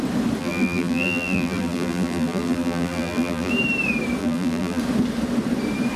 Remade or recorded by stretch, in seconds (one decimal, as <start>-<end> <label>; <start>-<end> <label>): 0.0-0.4 recorded; 0.4-3.5 remade; 3.5-4.2 recorded; 4.2-4.8 remade; 4.8-6.0 recorded